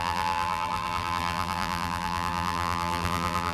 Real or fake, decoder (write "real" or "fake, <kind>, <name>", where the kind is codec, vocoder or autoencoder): fake, vocoder, BigVGAN v2